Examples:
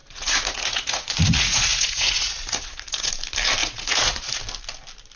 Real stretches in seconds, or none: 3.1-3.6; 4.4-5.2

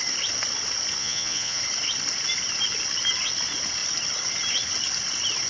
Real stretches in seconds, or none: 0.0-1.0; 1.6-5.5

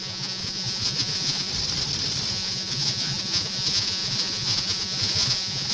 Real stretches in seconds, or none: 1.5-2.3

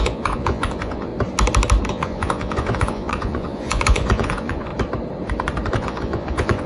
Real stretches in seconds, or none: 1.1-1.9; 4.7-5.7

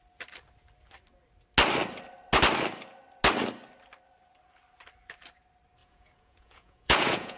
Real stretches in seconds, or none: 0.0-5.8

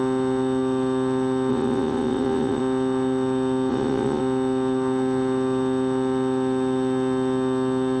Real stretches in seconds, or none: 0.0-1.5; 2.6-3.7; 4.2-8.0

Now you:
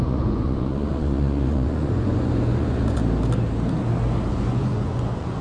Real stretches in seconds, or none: 3.0-4.3

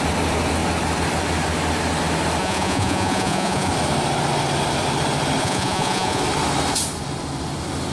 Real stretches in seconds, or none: 0.0-2.4; 3.7-5.4; 6.2-7.9